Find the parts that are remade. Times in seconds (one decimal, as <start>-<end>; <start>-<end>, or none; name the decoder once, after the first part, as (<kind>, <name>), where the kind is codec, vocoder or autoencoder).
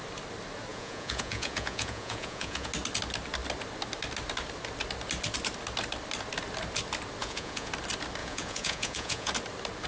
0.7-2.7 (vocoder, Vocos); 7.2-7.7; 8.2-9.3